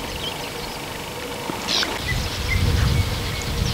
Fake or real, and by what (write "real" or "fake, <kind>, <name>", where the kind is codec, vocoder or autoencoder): real